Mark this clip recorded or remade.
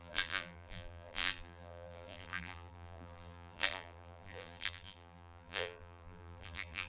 remade